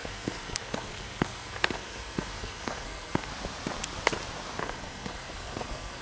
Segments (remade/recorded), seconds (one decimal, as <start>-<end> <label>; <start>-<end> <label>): 0.0-3.3 remade; 3.3-4.6 recorded; 4.6-6.0 remade